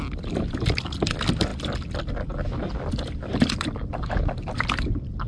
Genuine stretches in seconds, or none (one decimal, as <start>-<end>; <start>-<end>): 0.0-5.3